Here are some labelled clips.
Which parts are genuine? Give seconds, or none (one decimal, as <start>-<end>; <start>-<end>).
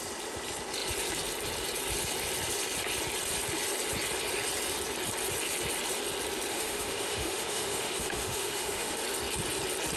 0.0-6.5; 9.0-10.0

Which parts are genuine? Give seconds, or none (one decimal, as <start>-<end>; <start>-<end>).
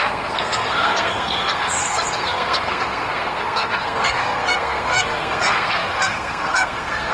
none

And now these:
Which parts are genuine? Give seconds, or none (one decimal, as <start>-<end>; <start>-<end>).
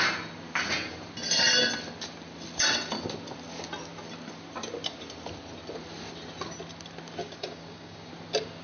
0.0-7.2; 8.1-8.6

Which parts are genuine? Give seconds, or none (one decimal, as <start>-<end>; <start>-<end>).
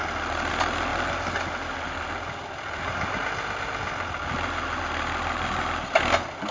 0.0-6.5